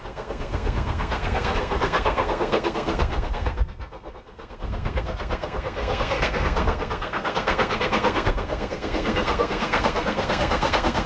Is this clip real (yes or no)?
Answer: no